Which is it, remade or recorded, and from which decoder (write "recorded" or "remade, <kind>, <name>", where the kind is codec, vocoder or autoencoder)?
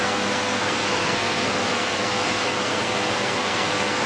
remade, codec, SNAC